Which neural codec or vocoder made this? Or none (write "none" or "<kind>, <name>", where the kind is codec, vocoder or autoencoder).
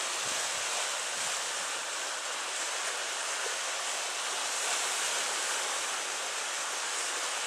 none